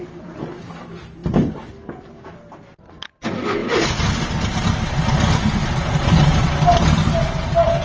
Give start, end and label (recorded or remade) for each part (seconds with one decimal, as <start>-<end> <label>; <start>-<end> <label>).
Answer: 0.0-1.2 recorded; 1.2-1.7 remade; 1.7-5.6 recorded; 5.6-6.8 remade; 6.8-7.8 recorded

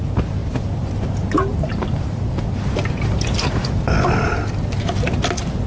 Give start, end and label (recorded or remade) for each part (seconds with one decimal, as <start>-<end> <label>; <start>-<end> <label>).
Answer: 0.0-1.5 recorded; 1.5-4.6 remade; 4.6-5.7 recorded

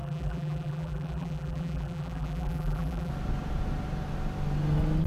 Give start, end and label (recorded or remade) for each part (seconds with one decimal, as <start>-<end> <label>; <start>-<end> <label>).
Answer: 0.0-3.1 remade; 3.1-5.1 recorded

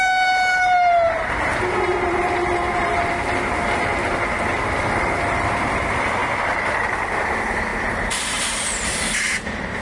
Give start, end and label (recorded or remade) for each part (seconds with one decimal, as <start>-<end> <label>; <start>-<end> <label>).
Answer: 0.0-1.2 remade; 1.2-2.0 recorded; 2.0-4.0 remade; 4.0-4.9 recorded; 4.9-6.2 remade; 6.2-7.2 recorded; 7.2-9.8 remade

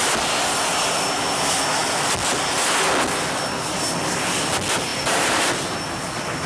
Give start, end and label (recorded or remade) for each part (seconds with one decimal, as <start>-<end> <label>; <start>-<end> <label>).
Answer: 0.0-4.9 recorded; 4.9-5.4 remade; 5.4-6.5 recorded

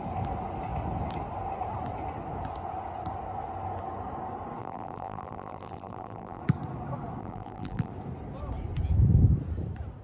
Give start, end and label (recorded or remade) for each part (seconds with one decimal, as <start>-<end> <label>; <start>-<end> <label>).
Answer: 0.0-4.6 recorded; 4.6-6.4 remade; 6.4-7.2 recorded; 7.2-7.9 remade; 7.9-10.0 recorded